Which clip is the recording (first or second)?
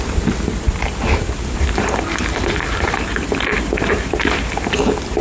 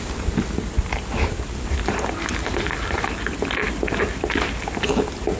second